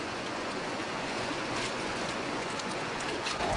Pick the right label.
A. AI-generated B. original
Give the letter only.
A